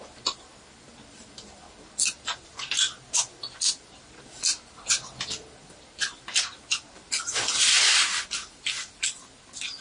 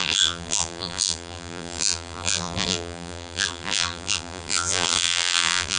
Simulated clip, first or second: second